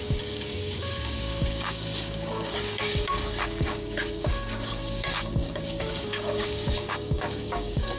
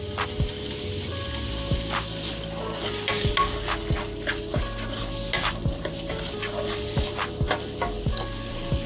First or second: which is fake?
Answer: first